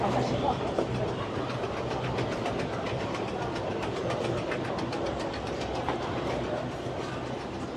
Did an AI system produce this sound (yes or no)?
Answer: no